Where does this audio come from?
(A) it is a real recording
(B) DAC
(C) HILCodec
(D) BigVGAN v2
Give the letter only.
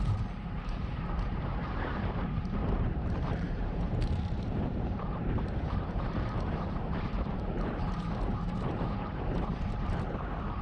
D